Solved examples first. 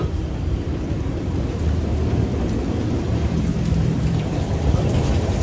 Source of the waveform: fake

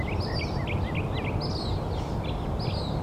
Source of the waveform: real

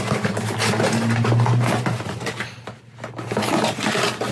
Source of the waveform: real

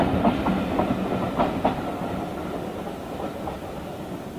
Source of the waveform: real